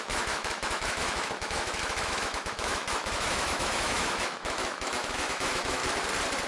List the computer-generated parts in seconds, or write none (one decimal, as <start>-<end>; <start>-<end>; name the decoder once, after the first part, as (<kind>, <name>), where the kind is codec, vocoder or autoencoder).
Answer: 0.0-5.8 (autoencoder, DAC-VAE)